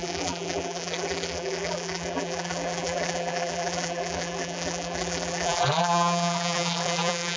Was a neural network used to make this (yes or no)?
yes